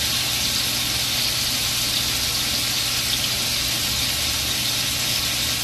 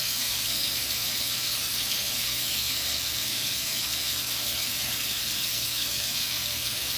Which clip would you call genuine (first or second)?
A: first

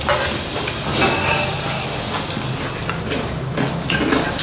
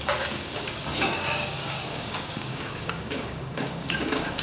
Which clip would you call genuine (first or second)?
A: first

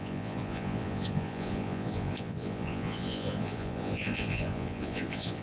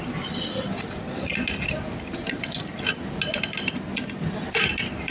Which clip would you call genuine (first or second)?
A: second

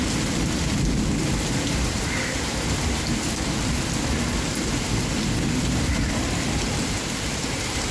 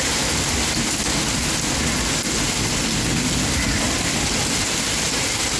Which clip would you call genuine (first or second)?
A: second